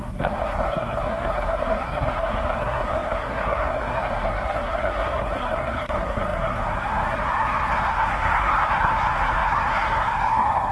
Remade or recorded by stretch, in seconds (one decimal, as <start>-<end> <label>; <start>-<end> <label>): 0.0-10.7 remade